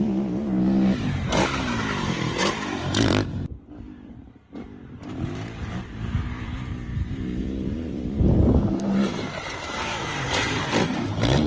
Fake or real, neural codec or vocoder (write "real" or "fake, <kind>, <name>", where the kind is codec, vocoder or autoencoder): fake, vocoder, BigVGAN v2